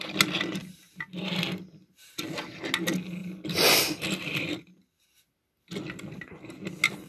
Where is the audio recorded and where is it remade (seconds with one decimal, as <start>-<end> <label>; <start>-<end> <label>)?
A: 0.0-7.1 recorded